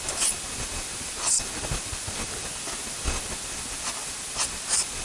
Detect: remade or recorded recorded